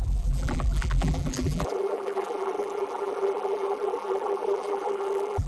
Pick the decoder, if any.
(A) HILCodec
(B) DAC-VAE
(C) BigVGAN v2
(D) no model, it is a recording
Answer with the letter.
C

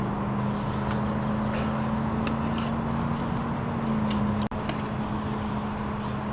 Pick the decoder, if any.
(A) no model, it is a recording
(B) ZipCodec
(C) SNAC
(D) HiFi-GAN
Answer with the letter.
A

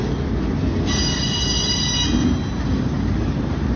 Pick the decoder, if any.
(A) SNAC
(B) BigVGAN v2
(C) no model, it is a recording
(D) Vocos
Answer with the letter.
C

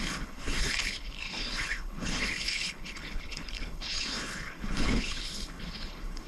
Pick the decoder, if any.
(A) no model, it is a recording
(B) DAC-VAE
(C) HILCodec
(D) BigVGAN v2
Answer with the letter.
C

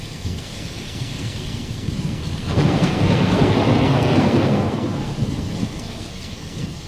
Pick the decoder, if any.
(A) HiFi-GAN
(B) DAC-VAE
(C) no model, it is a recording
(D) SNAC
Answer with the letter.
D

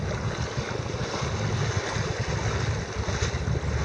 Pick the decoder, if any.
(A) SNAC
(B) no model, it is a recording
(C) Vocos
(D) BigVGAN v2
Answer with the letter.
B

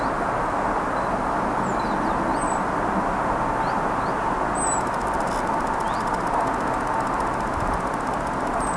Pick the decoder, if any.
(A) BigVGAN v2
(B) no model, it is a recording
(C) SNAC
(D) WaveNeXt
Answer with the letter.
B